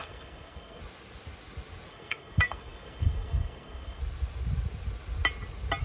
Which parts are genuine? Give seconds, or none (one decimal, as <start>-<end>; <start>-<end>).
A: 0.8-1.9; 4.0-5.8